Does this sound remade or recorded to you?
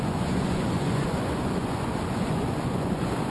remade